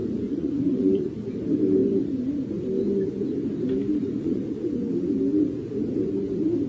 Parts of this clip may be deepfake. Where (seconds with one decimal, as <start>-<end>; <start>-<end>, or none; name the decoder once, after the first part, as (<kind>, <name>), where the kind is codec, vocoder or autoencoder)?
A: 0.0-1.1 (vocoder, Vocos); 4.0-4.7